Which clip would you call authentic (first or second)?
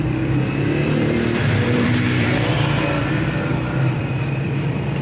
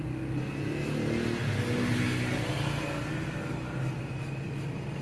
second